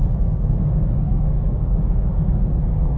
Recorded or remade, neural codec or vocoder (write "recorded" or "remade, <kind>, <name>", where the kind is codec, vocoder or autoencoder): remade, codec, SNAC